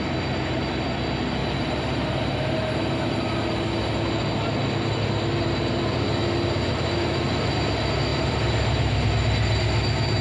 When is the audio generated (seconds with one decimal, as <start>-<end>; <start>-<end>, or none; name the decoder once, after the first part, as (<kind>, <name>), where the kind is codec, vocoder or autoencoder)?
1.4-3.1 (vocoder, BigVGAN v2); 8.1-9.1